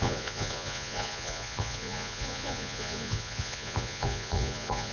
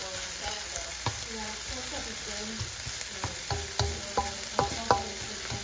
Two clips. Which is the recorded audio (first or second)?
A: second